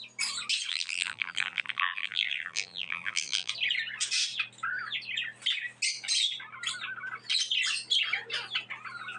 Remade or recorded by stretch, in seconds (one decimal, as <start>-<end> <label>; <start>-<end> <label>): 0.0-0.7 recorded; 0.7-3.5 remade; 3.5-9.2 recorded